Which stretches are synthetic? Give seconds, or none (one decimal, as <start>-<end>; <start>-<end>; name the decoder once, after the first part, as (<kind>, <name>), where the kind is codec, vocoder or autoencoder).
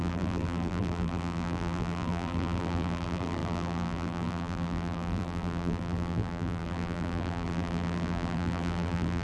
0.0-9.2 (vocoder, BigVGAN v2)